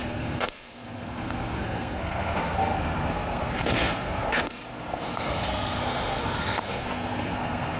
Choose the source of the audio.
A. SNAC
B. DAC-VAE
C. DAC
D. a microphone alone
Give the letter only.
A